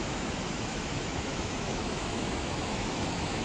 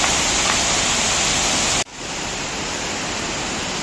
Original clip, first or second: second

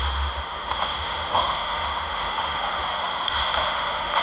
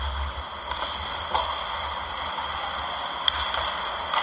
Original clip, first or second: second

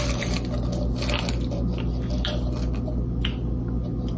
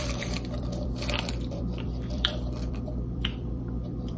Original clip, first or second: first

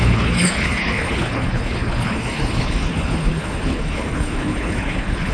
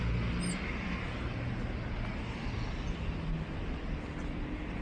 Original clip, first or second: second